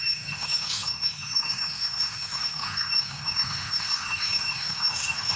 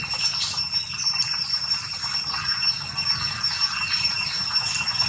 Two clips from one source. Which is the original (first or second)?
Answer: second